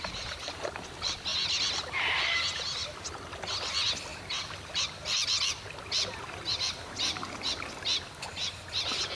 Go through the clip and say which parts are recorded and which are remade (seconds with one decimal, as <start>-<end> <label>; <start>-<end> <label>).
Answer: 0.0-4.1 recorded; 4.1-4.8 remade; 4.8-9.1 recorded